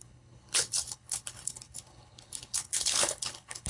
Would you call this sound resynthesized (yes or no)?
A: yes